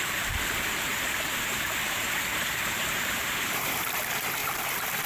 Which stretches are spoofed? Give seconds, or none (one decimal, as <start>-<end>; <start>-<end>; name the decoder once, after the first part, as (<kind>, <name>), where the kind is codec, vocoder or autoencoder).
0.9-4.0 (vocoder, BigVGAN v2); 4.4-5.1